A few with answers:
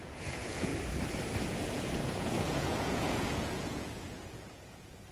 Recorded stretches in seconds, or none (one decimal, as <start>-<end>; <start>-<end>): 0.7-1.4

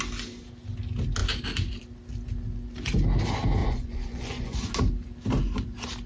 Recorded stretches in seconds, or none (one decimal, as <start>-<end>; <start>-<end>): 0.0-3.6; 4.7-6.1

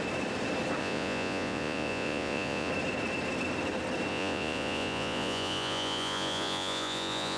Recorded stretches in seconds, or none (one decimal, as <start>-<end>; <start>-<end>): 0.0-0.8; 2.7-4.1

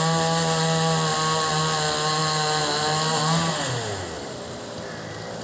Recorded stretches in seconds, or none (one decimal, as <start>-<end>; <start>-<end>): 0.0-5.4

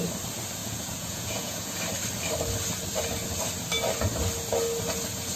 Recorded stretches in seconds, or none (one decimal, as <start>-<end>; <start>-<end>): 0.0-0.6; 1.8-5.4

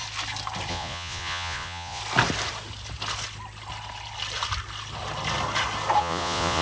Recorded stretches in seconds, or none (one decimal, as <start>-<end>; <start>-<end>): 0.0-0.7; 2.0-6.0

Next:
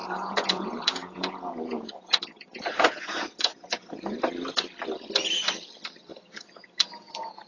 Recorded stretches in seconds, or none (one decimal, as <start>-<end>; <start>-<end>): 4.2-6.1